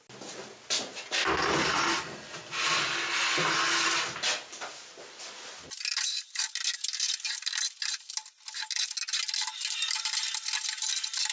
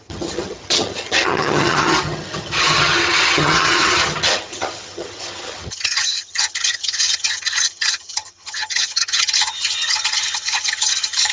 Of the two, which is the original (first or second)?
first